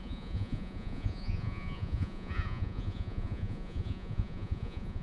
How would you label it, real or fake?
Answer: fake